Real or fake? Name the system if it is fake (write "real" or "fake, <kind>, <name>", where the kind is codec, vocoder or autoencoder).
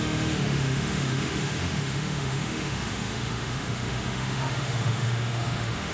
fake, autoencoder, DAC-VAE